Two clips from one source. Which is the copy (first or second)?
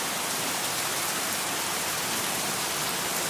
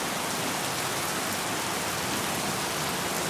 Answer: first